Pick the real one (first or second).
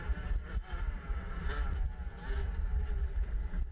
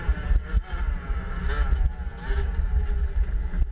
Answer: second